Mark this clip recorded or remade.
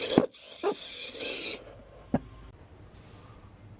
recorded